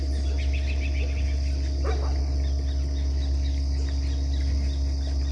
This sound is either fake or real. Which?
real